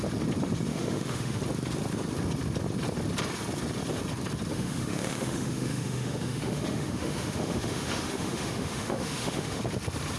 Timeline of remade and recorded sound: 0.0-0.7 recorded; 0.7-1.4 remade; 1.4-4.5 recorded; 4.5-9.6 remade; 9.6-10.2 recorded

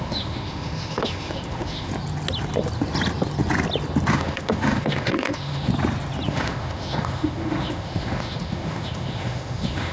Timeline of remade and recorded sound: 0.0-1.9 remade; 1.9-4.1 recorded; 4.1-5.7 remade; 5.7-6.3 recorded; 6.3-9.9 remade

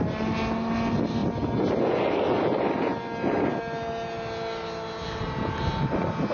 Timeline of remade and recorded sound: 0.0-6.3 recorded

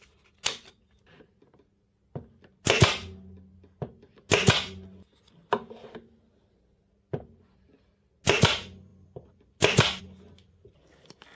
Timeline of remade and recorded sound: 0.0-11.4 recorded

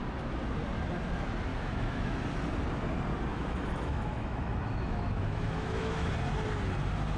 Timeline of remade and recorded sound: 0.0-1.5 recorded; 1.5-2.2 remade; 2.2-3.3 recorded; 3.3-6.1 remade; 6.1-7.2 recorded